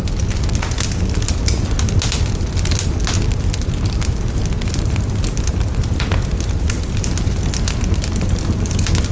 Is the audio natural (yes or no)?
yes